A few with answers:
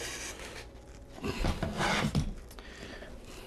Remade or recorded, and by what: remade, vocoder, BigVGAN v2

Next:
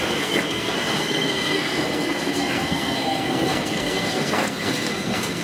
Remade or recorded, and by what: remade, codec, SNAC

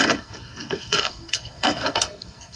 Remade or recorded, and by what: remade, codec, SNAC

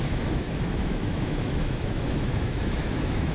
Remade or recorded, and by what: remade, autoencoder, DAC-VAE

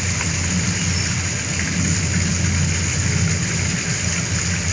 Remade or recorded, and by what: recorded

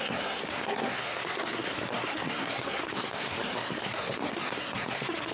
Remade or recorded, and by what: remade, codec, SNAC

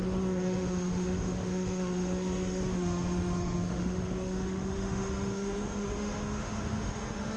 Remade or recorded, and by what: remade, autoencoder, DAC-VAE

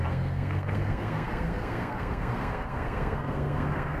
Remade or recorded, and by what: remade, codec, SNAC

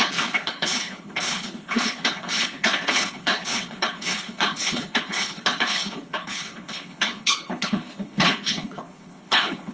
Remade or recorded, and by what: remade, codec, HILCodec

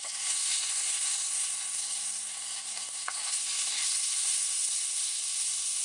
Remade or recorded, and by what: remade, codec, SNAC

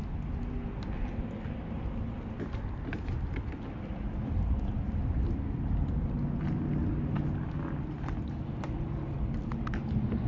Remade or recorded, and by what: recorded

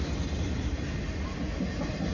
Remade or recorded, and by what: recorded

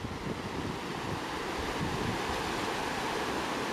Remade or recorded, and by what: recorded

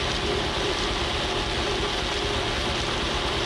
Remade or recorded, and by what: recorded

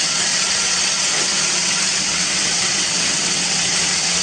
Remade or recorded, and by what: remade, vocoder, WaveNeXt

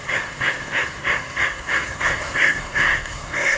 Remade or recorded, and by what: remade, codec, SNAC